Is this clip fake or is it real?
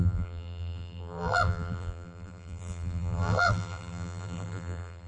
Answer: fake